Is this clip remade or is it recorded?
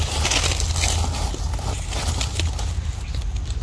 recorded